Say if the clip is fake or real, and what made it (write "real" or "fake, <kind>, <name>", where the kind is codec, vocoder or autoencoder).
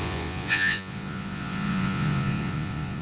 fake, vocoder, Vocos